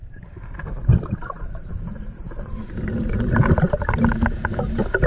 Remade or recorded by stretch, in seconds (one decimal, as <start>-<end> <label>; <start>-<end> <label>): 0.0-0.8 recorded; 0.8-3.9 remade; 3.9-5.1 recorded